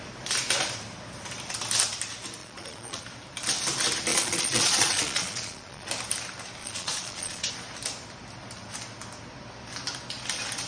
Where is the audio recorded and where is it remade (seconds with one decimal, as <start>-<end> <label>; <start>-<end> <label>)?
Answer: 0.0-2.4 recorded; 2.4-3.0 remade; 3.0-4.1 recorded; 4.1-5.9 remade; 5.9-6.6 recorded; 6.6-7.5 remade; 7.5-10.7 recorded